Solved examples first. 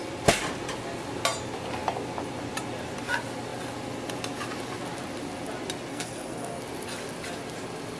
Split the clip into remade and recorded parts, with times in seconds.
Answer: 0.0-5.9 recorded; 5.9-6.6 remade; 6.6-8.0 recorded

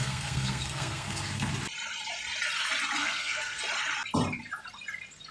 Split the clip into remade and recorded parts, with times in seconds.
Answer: 0.0-1.5 remade; 1.5-3.0 recorded; 3.0-3.6 remade; 3.6-5.3 recorded

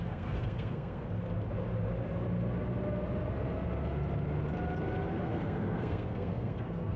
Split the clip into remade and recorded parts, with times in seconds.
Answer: 0.0-1.0 remade; 1.0-5.2 recorded; 5.2-7.0 remade

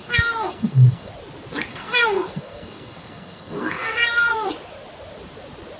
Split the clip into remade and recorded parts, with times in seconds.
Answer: 0.0-1.1 remade; 1.1-1.7 recorded; 1.7-4.5 remade; 4.5-5.8 recorded

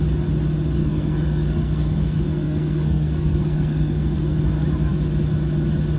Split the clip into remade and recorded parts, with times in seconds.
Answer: 0.0-0.8 recorded; 0.8-4.4 remade; 4.4-6.0 recorded